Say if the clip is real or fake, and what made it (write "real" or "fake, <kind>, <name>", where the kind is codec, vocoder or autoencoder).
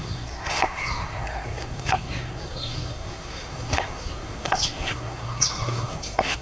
fake, codec, SNAC